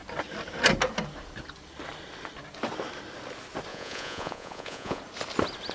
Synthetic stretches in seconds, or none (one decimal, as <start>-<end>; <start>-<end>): 3.7-5.0